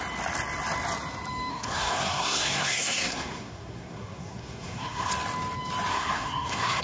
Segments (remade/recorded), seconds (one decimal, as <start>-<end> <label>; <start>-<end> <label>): 0.0-1.5 recorded; 1.5-5.1 remade; 5.1-5.9 recorded; 5.9-6.8 remade